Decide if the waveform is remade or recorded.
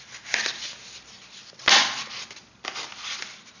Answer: recorded